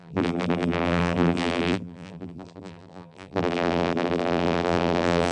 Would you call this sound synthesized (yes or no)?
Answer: yes